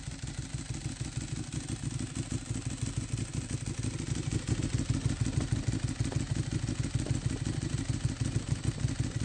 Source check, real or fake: real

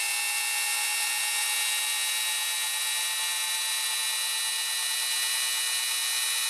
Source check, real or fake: real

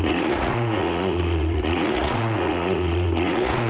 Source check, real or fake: fake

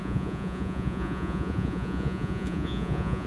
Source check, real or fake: fake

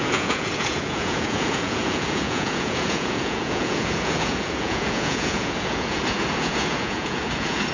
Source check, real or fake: fake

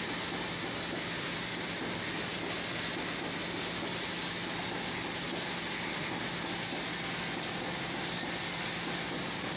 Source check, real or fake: real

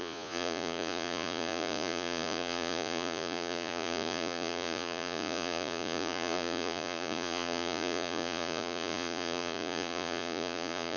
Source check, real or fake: fake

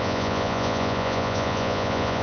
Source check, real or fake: fake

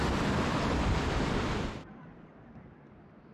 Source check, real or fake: real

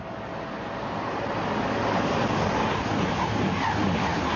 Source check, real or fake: real